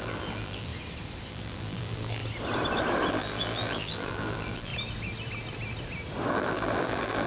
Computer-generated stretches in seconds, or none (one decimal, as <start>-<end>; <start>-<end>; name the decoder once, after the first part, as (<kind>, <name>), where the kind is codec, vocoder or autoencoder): 0.0-0.7 (vocoder, BigVGAN v2); 1.3-2.2; 3.1-4.7; 6.3-7.3